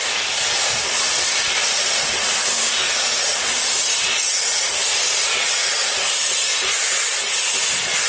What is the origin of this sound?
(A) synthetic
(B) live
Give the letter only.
B